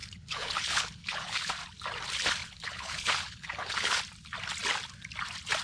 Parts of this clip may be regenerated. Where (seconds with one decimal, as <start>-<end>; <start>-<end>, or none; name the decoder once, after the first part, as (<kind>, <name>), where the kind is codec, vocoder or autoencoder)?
0.0-1.5 (codec, HILCodec); 2.4-4.0